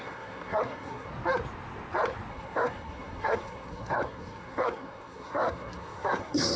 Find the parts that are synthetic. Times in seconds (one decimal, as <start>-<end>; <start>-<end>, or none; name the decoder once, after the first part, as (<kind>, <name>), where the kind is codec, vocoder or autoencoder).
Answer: 0.0-1.1 (codec, SNAC); 2.3-6.6